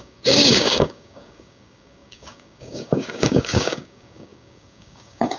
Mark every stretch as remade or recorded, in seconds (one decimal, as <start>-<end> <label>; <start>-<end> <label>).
0.0-5.4 remade